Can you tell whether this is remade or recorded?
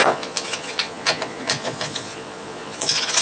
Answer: remade